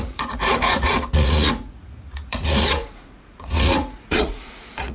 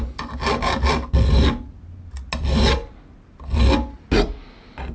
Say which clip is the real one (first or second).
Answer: second